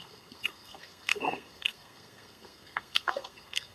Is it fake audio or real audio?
fake